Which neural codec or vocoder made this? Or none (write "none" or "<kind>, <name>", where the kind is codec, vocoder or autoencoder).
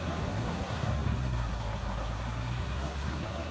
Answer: codec, SNAC